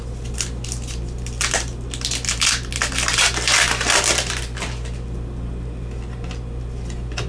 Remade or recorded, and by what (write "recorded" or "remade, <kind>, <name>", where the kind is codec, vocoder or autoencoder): recorded